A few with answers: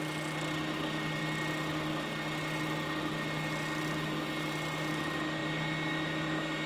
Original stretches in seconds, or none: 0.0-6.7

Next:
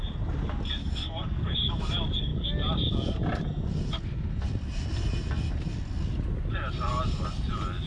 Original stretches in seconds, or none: 0.0-0.8; 1.8-7.9

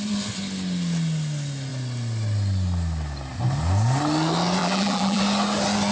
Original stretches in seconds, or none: 0.0-4.6; 5.2-5.9

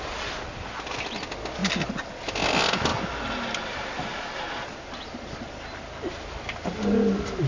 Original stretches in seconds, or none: 0.0-7.5

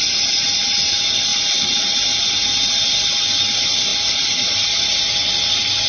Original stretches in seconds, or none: 0.0-5.9

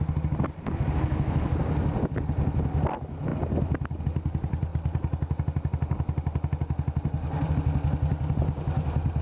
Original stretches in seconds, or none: 0.0-9.2